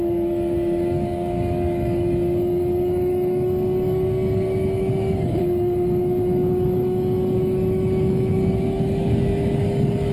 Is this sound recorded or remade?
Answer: remade